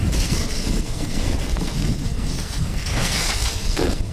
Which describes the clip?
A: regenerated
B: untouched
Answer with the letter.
A